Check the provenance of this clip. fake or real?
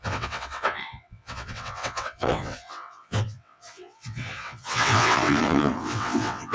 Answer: fake